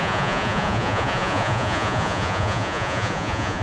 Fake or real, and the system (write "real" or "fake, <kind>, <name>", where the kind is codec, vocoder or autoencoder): fake, vocoder, Vocos